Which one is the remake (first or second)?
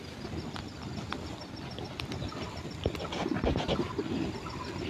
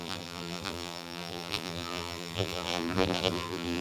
second